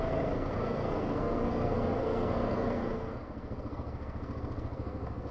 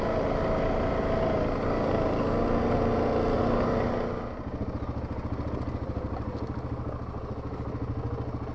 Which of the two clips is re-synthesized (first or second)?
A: first